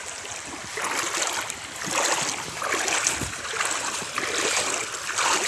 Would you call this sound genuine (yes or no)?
yes